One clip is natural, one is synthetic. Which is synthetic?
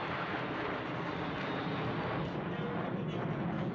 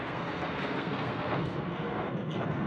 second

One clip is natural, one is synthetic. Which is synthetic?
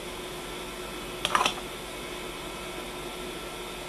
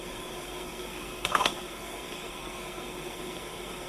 second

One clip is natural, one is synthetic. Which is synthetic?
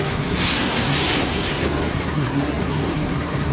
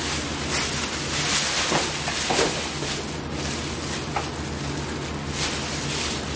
first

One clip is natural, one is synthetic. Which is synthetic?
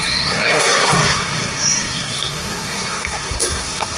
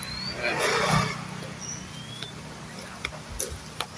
first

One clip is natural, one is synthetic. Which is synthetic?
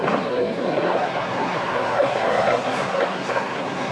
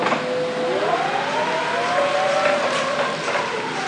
first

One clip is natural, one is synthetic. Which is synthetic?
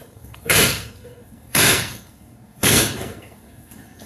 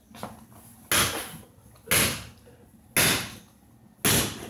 first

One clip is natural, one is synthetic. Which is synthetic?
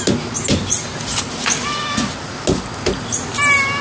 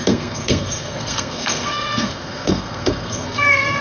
second